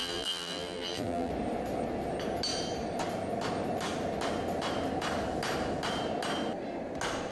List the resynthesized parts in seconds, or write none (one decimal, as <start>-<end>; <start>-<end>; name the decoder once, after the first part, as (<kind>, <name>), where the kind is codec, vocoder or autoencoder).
0.0-1.3 (vocoder, BigVGAN v2)